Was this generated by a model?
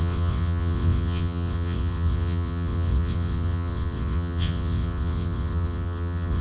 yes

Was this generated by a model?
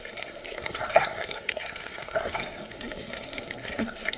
yes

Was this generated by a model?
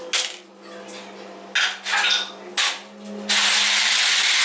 no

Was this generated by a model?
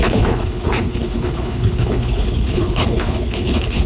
yes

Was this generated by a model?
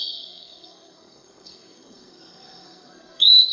yes